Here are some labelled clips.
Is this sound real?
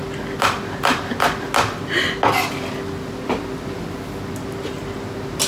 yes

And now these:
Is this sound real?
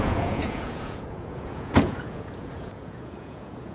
no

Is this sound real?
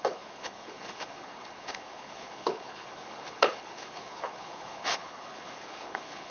no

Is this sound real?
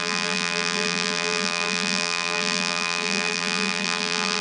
no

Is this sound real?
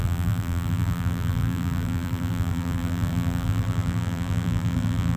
no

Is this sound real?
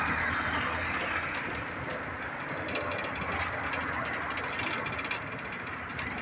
yes